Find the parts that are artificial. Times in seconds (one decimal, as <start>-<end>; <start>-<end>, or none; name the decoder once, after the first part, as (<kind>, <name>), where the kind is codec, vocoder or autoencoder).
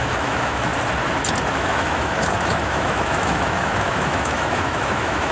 0.0-0.7 (autoencoder, DAC-VAE); 1.5-5.3